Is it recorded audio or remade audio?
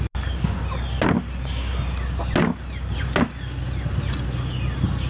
recorded